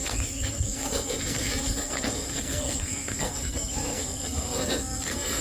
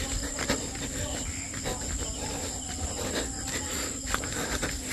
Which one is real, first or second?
second